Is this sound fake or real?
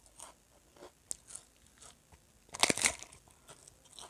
real